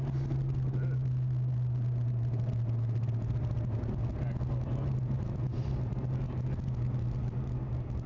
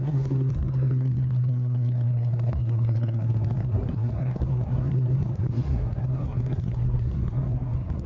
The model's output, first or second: second